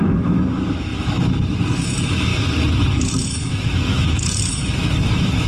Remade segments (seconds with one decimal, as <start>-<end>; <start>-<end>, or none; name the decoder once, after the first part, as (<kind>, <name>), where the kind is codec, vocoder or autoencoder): 0.0-2.3 (autoencoder, DAC-VAE); 2.9-5.5